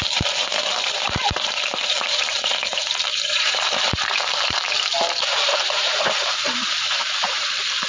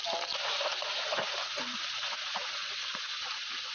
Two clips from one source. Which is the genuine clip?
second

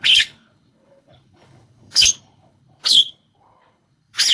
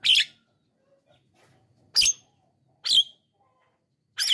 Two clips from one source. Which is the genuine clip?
second